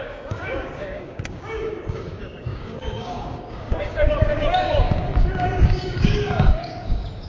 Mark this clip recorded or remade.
remade